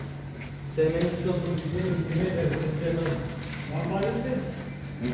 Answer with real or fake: real